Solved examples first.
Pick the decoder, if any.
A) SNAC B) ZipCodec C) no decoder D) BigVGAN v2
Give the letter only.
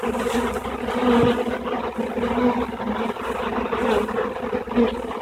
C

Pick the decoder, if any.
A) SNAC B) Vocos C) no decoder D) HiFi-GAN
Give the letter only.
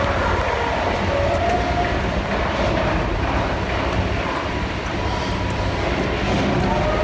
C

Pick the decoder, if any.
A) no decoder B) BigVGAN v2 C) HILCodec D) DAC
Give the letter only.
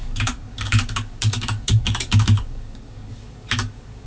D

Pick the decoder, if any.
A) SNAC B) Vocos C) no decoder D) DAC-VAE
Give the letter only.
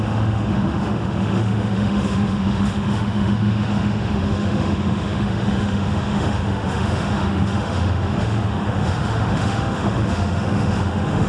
D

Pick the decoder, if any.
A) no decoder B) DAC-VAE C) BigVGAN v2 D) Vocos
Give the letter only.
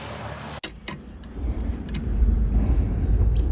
A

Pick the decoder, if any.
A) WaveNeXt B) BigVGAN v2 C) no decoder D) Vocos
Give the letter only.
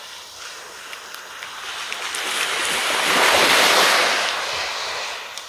C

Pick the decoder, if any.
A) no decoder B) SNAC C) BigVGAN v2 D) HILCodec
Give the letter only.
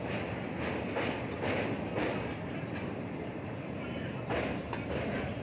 A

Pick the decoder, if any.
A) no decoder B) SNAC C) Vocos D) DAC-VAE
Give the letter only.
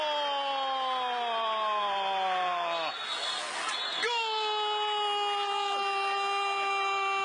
A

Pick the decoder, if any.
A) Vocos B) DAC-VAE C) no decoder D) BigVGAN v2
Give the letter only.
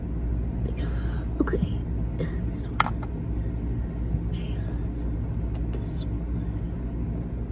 C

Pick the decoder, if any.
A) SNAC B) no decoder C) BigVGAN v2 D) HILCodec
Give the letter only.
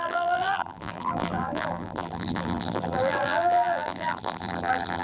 C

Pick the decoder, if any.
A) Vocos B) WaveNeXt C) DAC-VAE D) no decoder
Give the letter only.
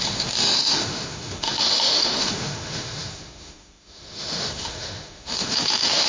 C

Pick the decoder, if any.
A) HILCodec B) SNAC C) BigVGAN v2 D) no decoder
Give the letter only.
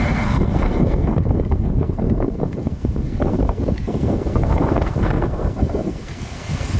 B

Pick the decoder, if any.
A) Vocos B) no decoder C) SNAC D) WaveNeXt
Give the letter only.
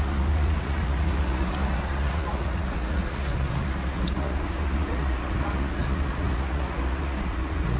A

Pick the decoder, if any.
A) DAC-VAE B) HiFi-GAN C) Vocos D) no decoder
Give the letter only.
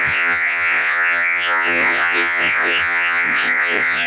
C